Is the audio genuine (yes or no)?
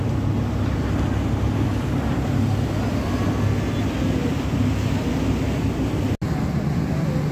yes